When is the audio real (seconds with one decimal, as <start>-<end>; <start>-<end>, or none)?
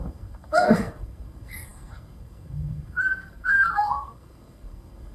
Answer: none